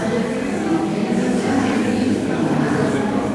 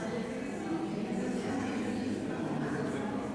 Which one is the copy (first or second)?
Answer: first